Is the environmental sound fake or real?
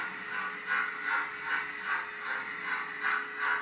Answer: real